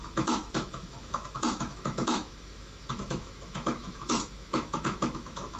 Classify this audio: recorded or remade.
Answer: remade